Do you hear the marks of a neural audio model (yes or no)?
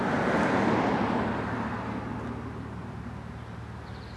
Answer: no